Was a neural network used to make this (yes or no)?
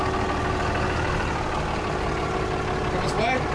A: no